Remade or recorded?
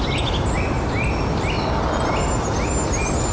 recorded